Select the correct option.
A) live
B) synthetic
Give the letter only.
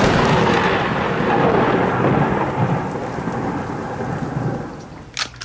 A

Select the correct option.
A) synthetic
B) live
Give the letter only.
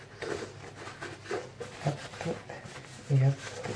B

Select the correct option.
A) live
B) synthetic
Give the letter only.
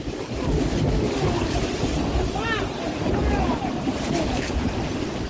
A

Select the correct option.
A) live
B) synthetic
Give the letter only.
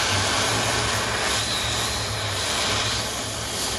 A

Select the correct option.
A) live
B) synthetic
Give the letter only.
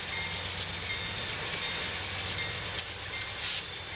A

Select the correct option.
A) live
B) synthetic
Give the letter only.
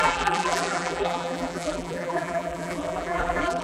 B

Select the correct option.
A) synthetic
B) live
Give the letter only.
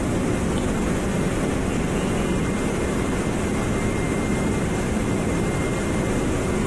A